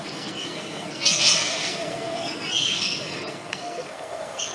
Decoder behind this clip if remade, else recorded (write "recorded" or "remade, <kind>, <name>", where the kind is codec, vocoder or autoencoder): remade, codec, SNAC